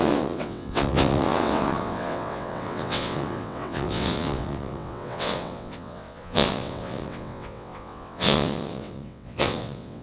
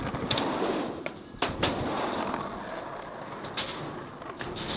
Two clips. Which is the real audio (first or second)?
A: second